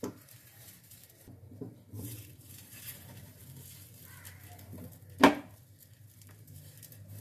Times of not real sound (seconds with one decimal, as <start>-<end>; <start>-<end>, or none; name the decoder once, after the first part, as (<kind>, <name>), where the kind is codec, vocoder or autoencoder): 0.0-3.4 (vocoder, BigVGAN v2); 5.2-7.2